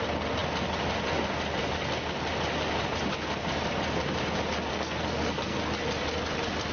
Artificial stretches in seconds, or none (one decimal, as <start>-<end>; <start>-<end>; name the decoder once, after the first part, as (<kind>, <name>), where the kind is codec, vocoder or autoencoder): 4.7-5.6 (codec, SNAC)